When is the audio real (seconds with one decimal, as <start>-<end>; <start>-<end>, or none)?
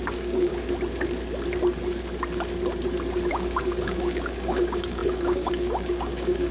0.5-3.3